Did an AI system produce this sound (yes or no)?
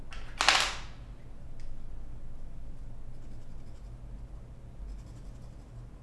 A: no